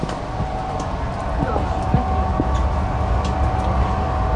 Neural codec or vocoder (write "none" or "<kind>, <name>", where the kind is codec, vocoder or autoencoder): none